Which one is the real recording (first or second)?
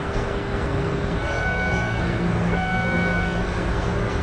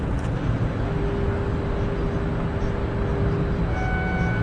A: second